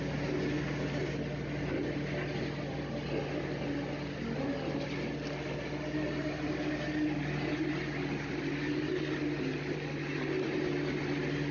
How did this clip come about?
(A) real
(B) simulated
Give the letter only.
A